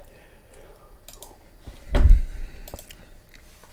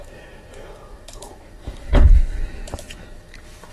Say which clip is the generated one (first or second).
second